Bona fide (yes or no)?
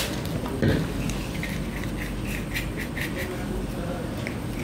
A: yes